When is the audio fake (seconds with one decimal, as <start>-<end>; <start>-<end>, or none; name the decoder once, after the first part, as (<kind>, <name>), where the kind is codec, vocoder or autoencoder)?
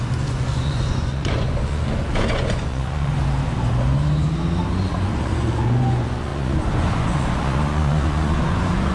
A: 0.0-3.1 (vocoder, Vocos); 4.8-8.9